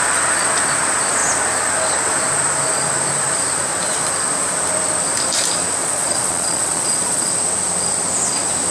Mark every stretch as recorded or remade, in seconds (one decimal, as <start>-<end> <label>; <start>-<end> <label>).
0.0-5.8 recorded; 5.8-7.3 remade; 7.3-8.7 recorded